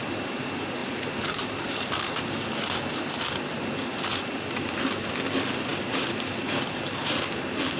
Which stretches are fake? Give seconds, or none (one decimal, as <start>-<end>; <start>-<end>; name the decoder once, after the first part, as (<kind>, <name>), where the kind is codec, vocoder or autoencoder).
0.8-3.2 (vocoder, BigVGAN v2)